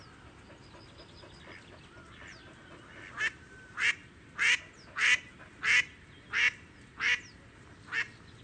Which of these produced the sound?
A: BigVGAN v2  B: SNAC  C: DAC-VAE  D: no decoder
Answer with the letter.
D